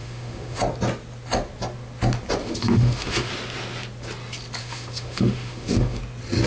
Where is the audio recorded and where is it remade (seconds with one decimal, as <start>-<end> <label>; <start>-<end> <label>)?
0.0-0.6 remade; 0.6-2.4 recorded; 2.4-3.3 remade; 3.3-4.6 recorded; 4.6-6.0 remade; 6.0-6.5 recorded